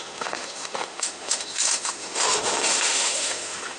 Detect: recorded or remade remade